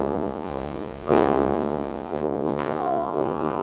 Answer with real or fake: fake